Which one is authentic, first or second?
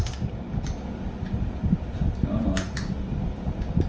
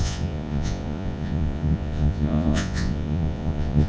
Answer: first